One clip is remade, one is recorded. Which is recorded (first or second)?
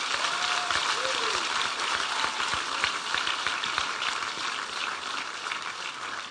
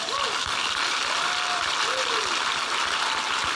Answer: second